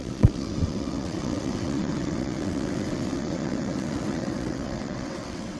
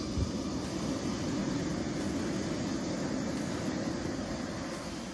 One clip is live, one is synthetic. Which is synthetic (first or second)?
first